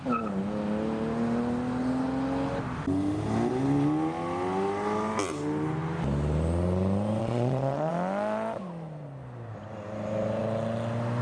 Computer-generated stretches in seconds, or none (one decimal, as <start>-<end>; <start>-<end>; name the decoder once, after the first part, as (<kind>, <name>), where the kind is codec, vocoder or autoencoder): 7.2-7.9 (vocoder, Vocos)